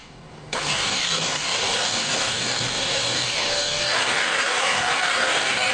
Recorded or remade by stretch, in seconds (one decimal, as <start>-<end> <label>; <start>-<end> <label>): 0.0-5.7 remade